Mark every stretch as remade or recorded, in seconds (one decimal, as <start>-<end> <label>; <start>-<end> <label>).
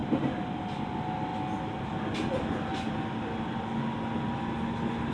0.0-5.1 recorded